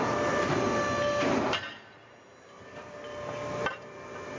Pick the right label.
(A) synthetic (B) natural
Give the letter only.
B